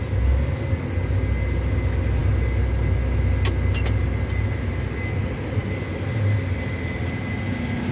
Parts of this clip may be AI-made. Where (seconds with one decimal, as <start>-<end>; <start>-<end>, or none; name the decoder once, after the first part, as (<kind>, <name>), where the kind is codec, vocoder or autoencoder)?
none

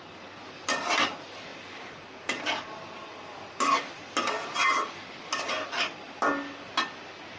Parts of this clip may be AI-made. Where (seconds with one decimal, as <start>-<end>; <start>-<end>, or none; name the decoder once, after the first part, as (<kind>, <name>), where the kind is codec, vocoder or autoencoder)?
none

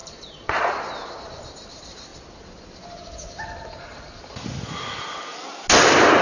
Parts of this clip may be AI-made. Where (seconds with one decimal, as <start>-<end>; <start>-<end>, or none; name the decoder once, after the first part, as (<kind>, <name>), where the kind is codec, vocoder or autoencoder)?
0.0-0.7 (vocoder, Vocos)

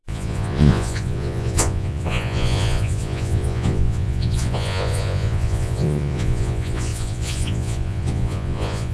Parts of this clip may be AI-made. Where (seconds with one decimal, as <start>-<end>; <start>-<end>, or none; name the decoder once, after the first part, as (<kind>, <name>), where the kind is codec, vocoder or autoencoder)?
0.0-8.9 (vocoder, Vocos)

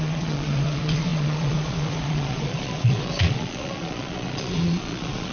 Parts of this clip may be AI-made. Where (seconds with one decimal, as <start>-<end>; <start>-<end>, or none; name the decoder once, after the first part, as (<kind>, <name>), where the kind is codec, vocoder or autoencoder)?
0.0-5.3 (vocoder, Vocos)